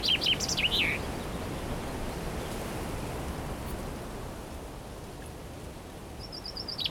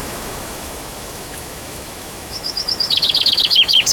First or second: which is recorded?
first